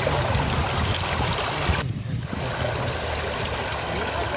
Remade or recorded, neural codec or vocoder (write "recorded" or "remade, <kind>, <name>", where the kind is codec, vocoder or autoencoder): recorded